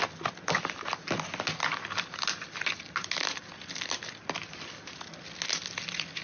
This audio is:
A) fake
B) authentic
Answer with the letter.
B